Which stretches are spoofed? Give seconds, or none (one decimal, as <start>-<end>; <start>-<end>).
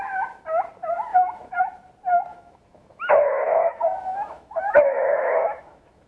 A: 1.1-1.6; 2.3-6.1